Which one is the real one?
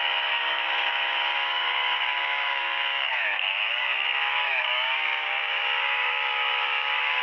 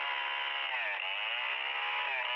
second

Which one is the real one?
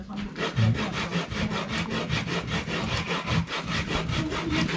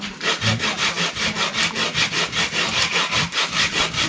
first